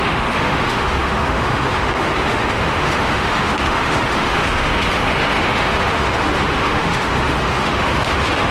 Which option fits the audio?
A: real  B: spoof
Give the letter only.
B